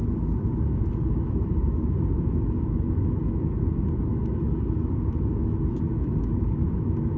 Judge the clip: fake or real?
fake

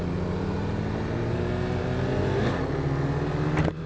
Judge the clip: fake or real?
real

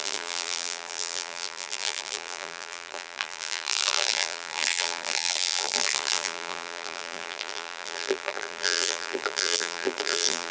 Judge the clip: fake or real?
fake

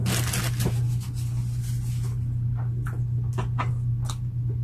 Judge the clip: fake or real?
real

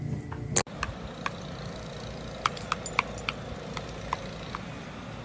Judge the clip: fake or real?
real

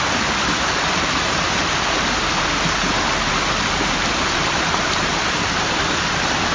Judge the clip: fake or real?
fake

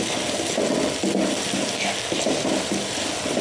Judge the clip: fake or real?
real